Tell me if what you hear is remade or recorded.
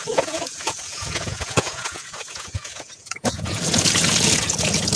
remade